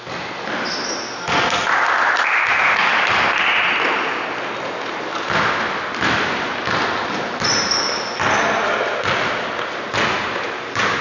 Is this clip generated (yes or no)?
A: no